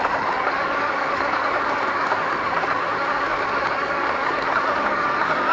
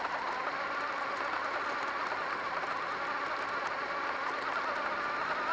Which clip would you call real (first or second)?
second